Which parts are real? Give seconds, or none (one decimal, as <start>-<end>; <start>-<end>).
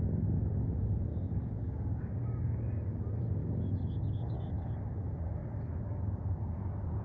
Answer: 0.0-1.1; 2.7-3.4; 4.7-7.0